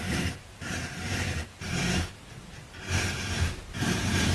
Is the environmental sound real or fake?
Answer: fake